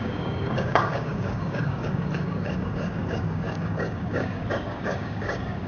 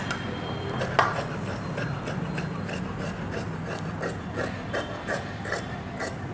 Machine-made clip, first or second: first